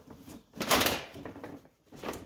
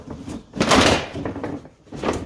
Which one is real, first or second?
second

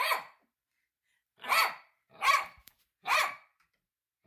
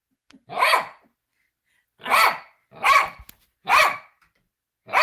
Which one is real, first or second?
second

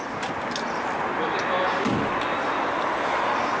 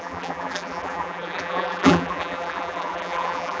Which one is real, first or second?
first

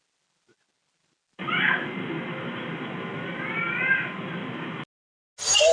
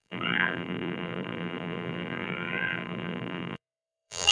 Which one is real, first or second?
first